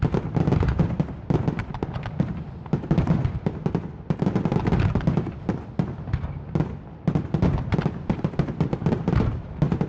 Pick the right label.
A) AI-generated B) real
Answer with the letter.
B